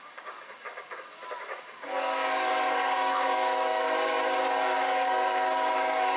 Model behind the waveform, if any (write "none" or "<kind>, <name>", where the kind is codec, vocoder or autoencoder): codec, DAC